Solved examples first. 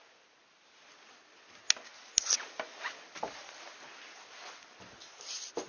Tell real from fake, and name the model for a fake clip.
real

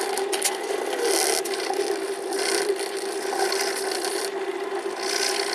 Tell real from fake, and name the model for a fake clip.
real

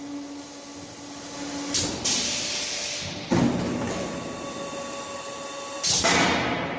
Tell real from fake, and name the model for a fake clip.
real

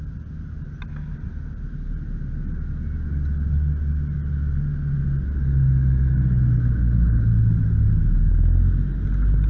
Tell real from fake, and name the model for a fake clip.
real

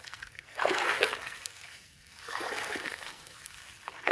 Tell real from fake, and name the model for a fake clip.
fake, codec, SNAC